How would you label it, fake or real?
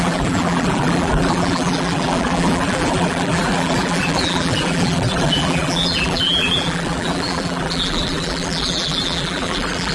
fake